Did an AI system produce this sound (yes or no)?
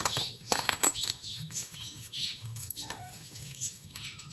yes